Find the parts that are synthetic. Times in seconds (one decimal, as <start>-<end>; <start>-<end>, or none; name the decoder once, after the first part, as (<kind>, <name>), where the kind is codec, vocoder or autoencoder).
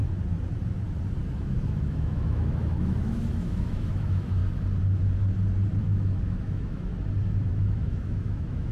1.4-4.4 (autoencoder, DAC-VAE); 5.8-6.9; 7.5-8.7